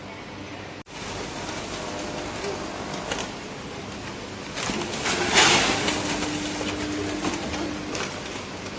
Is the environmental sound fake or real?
real